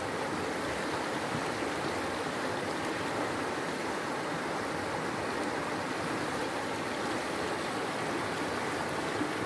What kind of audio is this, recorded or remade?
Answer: recorded